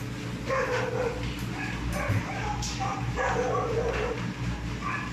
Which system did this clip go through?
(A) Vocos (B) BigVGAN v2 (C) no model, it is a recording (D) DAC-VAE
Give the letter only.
C